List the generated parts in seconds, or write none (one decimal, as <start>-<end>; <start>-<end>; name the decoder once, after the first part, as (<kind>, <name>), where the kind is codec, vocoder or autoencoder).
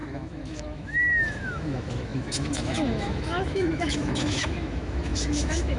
0.0-5.8 (autoencoder, DAC-VAE)